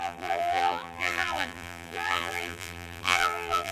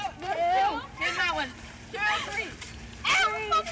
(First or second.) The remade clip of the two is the first